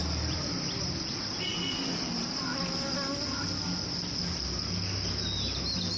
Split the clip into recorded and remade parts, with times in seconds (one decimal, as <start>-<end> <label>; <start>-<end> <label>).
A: 0.0-6.0 remade